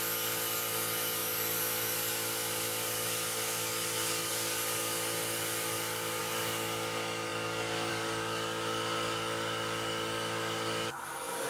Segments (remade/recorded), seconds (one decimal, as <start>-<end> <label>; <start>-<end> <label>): 0.0-11.5 remade